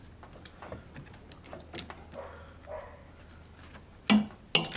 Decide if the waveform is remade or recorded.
recorded